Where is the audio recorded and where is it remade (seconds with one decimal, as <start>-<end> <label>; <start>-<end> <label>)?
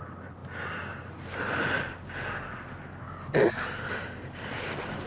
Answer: 0.0-5.1 recorded